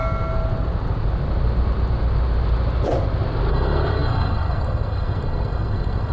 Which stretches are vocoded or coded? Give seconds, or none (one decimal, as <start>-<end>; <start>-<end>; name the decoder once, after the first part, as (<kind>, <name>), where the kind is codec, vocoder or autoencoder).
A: 3.5-6.1 (codec, SNAC)